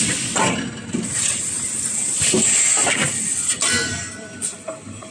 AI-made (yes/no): no